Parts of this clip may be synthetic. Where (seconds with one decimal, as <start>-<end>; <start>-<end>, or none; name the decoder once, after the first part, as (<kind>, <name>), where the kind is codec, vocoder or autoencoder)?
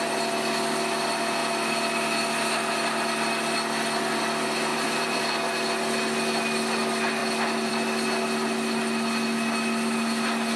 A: 4.7-5.2 (vocoder, BigVGAN v2)